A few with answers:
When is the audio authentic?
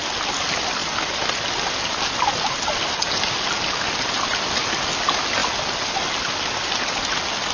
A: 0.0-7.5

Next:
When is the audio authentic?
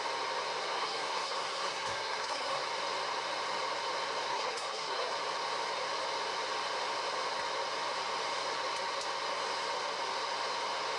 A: 0.0-0.6; 2.6-4.3; 5.1-11.0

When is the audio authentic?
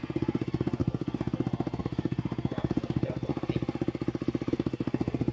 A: 3.3-4.5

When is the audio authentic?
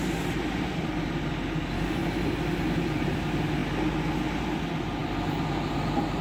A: 0.0-6.2